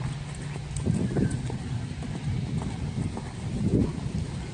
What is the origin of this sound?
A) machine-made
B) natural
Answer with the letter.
B